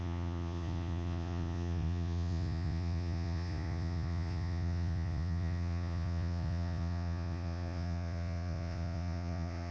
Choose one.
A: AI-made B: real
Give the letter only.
A